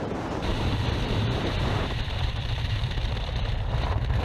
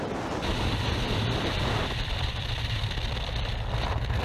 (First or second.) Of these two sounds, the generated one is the first